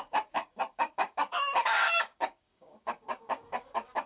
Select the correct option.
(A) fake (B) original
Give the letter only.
A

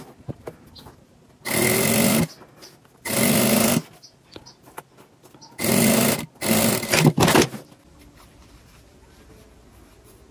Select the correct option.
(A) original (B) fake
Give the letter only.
A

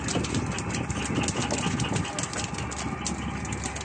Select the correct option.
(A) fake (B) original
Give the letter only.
B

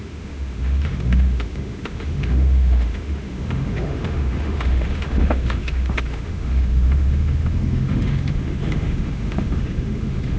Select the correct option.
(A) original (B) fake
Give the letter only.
B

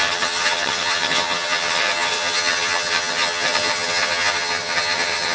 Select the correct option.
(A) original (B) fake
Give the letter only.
B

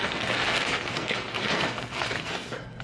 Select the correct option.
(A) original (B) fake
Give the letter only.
B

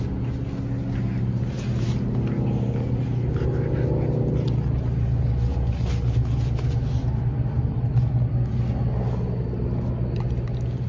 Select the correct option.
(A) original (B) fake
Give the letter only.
A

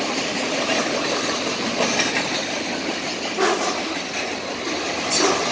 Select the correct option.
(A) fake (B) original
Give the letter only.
B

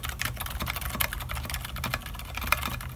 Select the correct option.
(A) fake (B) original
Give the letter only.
B